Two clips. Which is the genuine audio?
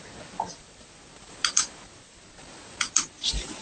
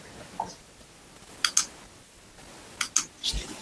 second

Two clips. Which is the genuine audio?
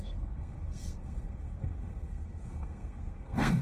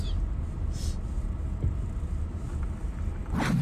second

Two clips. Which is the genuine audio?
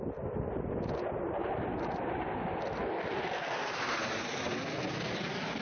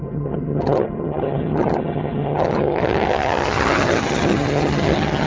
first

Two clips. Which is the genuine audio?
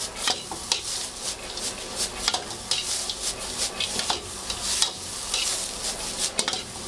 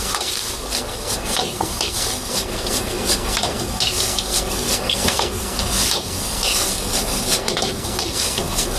first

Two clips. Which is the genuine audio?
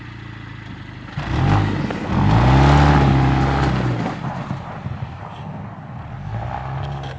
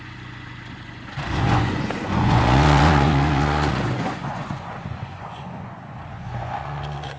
first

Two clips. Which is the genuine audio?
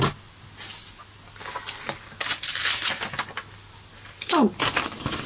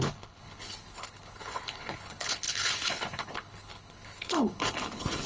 first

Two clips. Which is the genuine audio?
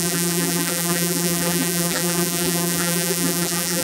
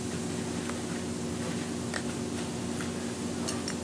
second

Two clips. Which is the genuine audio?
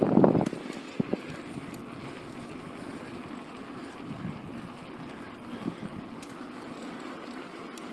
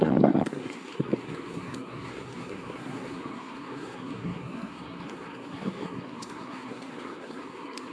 first